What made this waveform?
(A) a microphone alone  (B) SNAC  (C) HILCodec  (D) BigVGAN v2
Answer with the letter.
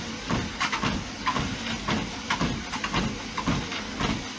A